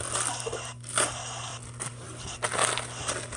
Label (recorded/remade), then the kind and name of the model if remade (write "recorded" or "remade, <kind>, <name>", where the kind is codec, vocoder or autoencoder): recorded